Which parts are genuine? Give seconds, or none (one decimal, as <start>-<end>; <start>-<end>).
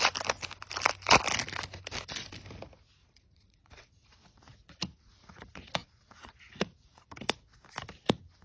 0.0-3.0; 7.0-8.4